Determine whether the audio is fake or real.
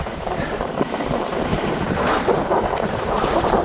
fake